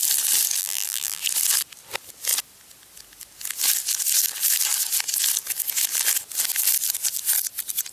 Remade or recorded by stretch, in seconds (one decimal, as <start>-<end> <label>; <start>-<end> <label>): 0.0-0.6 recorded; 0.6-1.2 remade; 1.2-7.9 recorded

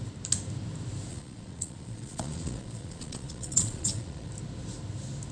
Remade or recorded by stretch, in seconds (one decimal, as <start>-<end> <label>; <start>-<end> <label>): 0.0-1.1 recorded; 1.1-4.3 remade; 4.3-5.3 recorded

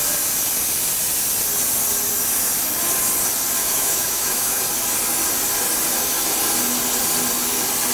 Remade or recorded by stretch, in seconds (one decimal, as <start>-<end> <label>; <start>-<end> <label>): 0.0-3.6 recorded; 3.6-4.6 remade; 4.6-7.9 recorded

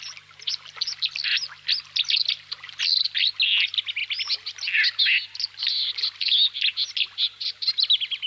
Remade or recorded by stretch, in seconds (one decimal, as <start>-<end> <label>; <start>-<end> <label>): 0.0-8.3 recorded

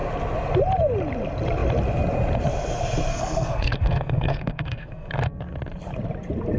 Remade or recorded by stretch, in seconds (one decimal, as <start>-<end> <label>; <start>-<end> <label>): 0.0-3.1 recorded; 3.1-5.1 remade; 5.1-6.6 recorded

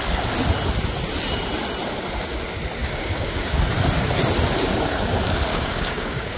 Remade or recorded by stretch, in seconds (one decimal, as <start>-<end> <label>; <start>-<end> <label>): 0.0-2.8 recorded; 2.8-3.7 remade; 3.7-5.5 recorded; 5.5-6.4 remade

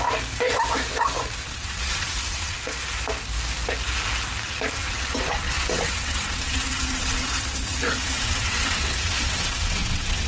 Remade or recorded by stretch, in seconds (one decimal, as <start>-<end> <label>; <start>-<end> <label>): 0.0-1.4 recorded; 1.4-2.9 remade; 2.9-4.8 recorded; 4.8-10.3 remade